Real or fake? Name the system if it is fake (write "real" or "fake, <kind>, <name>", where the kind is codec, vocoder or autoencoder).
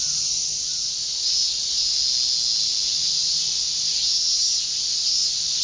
real